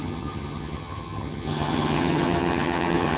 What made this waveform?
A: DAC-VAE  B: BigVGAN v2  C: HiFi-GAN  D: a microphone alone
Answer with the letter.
C